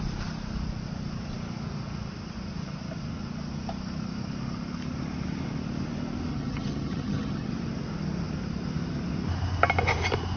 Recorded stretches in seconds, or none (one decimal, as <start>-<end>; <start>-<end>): 0.0-6.3; 7.5-10.4